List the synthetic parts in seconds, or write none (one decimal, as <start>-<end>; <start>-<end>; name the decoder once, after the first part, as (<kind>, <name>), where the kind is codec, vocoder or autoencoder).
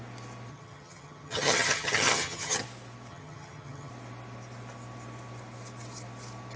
0.5-2.6 (vocoder, HiFi-GAN); 3.1-3.9